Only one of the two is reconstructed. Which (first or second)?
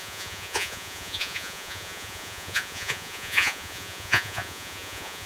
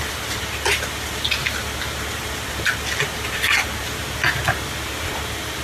first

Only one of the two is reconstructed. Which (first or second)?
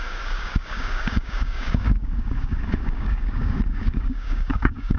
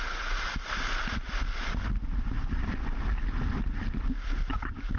first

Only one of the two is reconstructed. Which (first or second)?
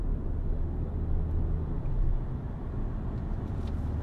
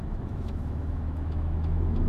second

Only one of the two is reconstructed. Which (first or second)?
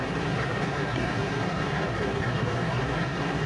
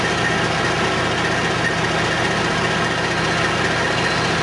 first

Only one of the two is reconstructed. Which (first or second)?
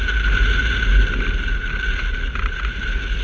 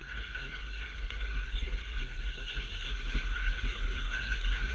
second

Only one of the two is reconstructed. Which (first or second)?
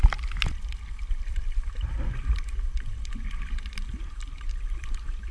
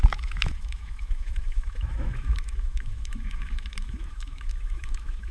second